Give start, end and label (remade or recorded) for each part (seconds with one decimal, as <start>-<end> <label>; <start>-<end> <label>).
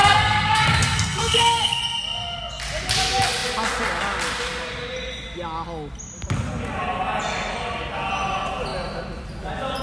0.0-1.8 remade; 1.8-9.8 recorded